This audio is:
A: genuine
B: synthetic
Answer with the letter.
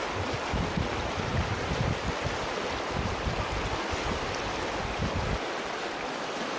A